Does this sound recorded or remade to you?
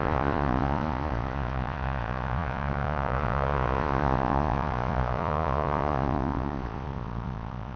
remade